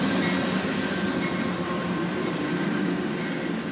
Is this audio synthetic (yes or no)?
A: no